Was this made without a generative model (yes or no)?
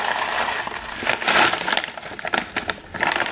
yes